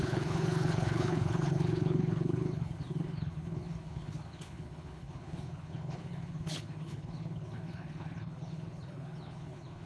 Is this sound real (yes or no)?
no